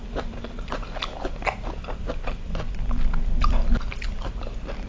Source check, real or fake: fake